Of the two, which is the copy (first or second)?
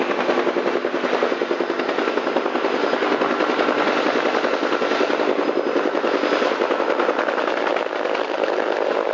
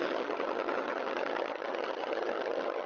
second